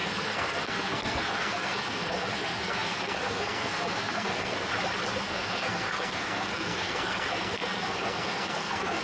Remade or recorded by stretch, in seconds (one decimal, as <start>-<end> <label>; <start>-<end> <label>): 0.0-4.7 remade; 4.7-5.2 recorded; 5.2-9.0 remade

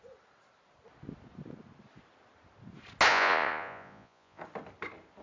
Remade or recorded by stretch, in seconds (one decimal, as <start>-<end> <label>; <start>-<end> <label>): 0.0-3.1 recorded; 3.1-4.4 remade; 4.4-5.2 recorded

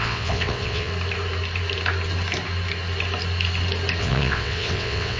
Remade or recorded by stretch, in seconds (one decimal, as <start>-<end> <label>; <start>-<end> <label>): 0.0-0.9 remade; 0.9-4.0 recorded; 4.0-5.2 remade

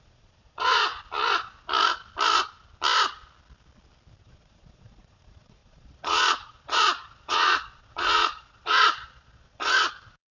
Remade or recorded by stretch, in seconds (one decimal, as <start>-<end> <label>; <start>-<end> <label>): 0.0-0.8 remade; 0.8-4.2 recorded; 4.2-10.3 remade